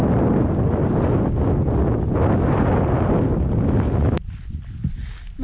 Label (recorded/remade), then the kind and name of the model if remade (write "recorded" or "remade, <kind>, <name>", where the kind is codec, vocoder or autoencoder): recorded